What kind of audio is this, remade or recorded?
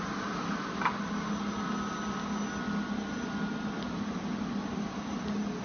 recorded